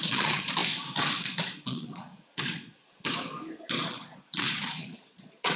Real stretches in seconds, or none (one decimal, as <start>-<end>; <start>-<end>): 0.6-1.5; 2.1-3.9